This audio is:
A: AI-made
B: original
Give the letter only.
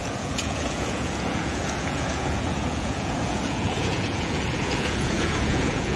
A